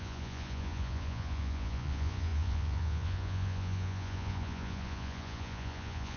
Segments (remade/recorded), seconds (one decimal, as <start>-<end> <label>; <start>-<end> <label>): 0.0-6.2 remade